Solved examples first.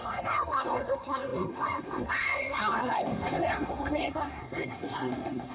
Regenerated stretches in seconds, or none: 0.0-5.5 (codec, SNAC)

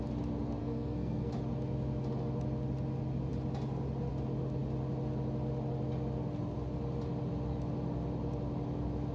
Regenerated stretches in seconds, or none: 0.6-1.3 (codec, SNAC)

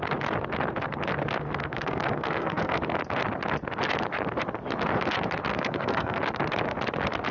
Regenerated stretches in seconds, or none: 1.6-2.8 (codec, SNAC); 5.5-6.2

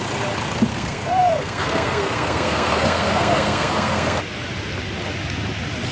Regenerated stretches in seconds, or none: 0.7-4.2 (codec, SNAC)

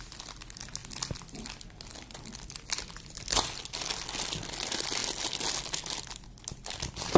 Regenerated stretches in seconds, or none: none

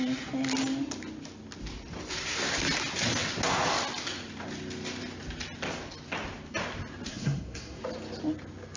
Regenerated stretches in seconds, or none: 7.1-7.8 (codec, SNAC)